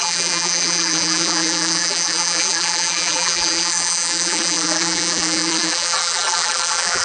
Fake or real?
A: fake